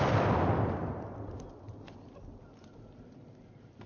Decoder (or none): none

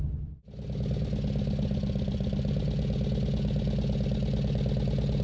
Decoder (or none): none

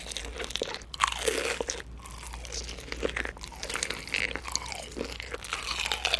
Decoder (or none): none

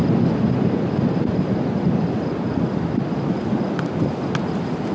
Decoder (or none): none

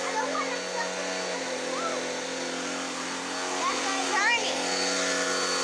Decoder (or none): none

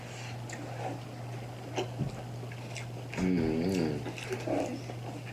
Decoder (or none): none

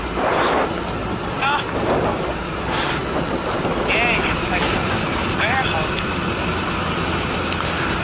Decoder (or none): none